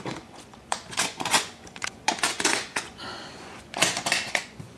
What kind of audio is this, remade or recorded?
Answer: remade